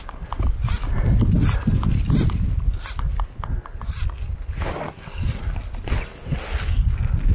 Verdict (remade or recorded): recorded